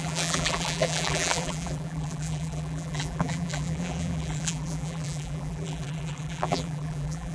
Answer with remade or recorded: remade